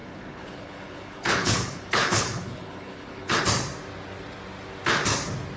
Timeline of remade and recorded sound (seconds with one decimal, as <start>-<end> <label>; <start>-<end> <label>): 0.0-3.4 remade; 3.4-5.6 recorded